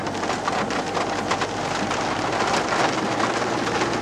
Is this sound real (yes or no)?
yes